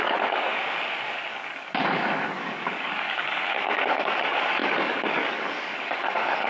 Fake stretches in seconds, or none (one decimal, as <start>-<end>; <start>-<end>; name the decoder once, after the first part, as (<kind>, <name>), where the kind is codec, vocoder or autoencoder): 0.0-0.6 (codec, DAC); 1.3-6.5